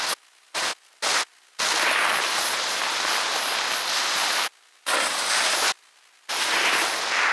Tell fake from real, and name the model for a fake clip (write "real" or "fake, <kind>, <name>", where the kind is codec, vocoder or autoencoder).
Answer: real